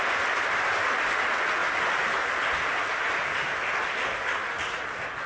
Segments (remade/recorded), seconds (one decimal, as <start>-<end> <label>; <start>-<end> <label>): 0.0-5.3 recorded